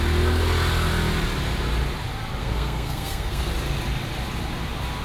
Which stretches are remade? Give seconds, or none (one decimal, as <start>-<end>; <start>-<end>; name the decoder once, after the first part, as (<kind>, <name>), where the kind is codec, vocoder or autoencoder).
2.4-3.5 (codec, SNAC)